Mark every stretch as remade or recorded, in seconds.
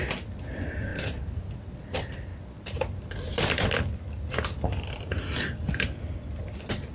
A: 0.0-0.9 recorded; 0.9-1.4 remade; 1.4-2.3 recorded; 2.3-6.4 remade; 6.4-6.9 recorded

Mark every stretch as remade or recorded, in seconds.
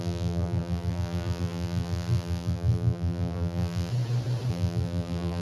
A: 0.0-3.9 remade; 3.9-4.5 recorded; 4.5-5.4 remade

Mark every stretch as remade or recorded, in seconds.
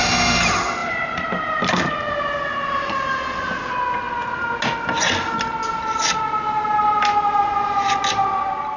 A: 0.0-0.8 recorded; 0.8-1.9 remade; 1.9-8.8 recorded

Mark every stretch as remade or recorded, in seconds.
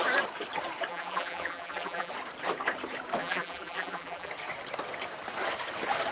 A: 0.0-0.9 recorded; 0.9-2.1 remade; 2.1-3.2 recorded; 3.2-4.3 remade; 4.3-6.1 recorded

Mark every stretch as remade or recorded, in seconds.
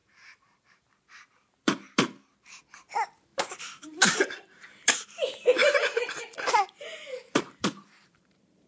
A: 0.0-2.6 remade; 2.6-3.3 recorded; 3.3-5.0 remade; 5.0-5.6 recorded; 5.6-8.7 remade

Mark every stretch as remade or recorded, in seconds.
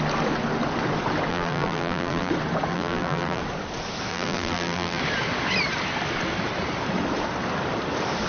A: 0.0-1.3 recorded; 1.3-2.3 remade; 2.3-2.7 recorded; 2.7-3.4 remade; 3.4-4.1 recorded; 4.1-5.0 remade; 5.0-8.3 recorded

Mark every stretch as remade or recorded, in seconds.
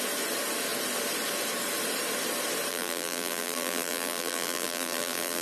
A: 0.0-2.7 recorded; 2.7-5.4 remade